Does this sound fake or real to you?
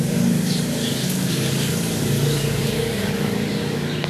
fake